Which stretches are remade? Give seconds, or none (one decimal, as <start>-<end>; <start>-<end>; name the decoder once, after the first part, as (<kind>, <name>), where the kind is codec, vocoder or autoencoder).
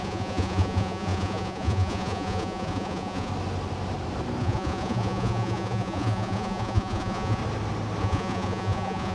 0.0-3.3 (vocoder, Vocos); 4.4-7.4; 8.0-9.1